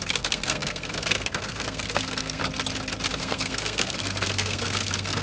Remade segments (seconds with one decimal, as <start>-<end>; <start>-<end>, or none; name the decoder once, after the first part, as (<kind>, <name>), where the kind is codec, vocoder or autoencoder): 0.0-2.4 (codec, SNAC); 3.1-5.2